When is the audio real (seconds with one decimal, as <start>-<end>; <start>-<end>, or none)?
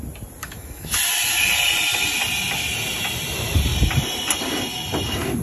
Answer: 0.0-0.4; 0.9-5.4